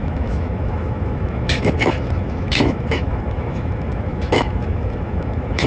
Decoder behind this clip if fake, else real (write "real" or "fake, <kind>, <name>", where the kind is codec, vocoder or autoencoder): fake, autoencoder, DAC-VAE